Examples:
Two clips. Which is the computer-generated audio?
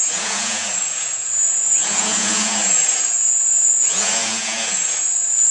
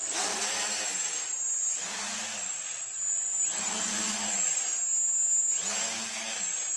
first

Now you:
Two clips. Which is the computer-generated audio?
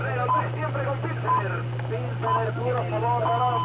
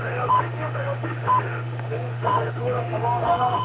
second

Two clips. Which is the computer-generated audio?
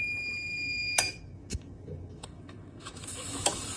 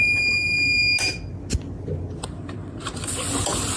first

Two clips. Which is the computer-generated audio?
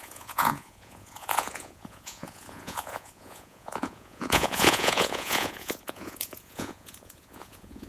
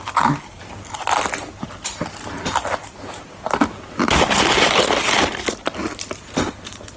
first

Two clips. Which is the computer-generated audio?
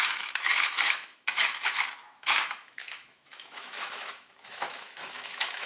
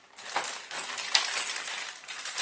first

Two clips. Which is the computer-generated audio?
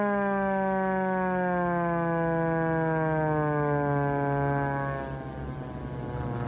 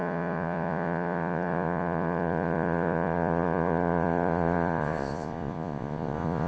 second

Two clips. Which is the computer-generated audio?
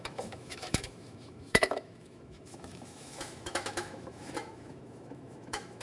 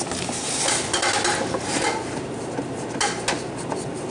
first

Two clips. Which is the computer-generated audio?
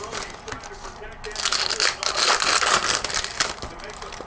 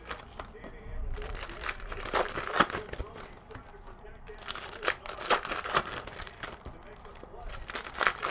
second